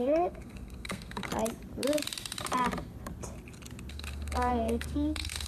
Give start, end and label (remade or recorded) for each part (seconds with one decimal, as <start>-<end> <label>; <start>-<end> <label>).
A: 0.0-1.3 remade; 1.3-3.9 recorded; 3.9-5.5 remade